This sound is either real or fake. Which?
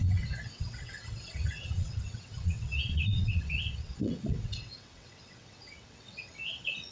fake